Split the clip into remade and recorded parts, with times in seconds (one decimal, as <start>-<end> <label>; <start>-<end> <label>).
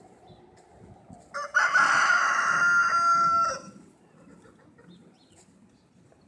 0.0-6.3 recorded